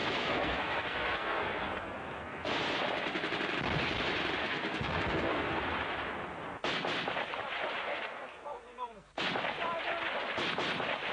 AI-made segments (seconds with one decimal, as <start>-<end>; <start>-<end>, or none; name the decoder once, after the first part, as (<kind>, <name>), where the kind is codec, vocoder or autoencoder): 0.0-2.5 (codec, SNAC); 4.4-5.6; 7.9-9.2

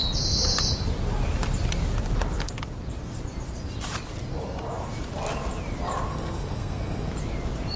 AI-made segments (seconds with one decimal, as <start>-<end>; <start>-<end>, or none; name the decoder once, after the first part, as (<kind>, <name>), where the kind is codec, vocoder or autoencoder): 6.1-7.1 (codec, SNAC)

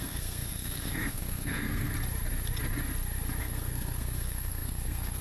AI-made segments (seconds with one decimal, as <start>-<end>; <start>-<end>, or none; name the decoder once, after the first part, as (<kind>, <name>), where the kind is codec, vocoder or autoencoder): 0.0-1.9 (codec, SNAC); 3.4-5.2

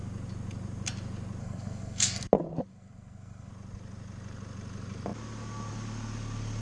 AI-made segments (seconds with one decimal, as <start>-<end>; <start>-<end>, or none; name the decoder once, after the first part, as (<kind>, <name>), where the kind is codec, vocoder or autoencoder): 1.4-2.2 (codec, SNAC); 2.7-3.5

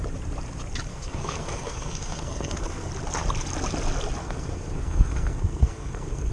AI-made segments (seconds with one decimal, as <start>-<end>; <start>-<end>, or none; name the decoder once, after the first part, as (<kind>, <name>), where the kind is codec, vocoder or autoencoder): 0.9-2.9 (codec, SNAC); 4.2-6.3

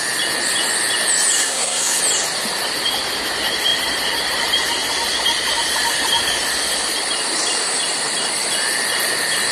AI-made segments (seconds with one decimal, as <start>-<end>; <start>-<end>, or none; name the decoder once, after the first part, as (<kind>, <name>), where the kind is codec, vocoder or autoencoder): 1.4-2.0 (codec, SNAC)

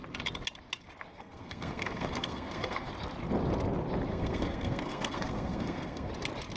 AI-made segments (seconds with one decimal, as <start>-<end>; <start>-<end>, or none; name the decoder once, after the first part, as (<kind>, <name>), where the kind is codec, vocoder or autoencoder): 1.1-2.9 (codec, SNAC); 4.1-6.1

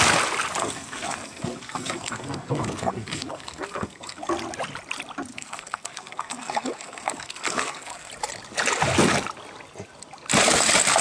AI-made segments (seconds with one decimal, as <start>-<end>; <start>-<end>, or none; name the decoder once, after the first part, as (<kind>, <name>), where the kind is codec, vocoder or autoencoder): 0.6-4.3 (codec, SNAC); 5.3-8.1